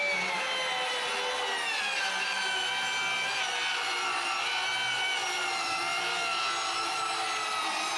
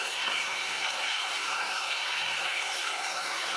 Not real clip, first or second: second